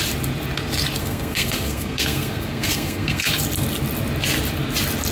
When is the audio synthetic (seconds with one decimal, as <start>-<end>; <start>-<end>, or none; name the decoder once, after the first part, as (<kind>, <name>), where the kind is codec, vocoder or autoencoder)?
1.0-3.3 (codec, SNAC)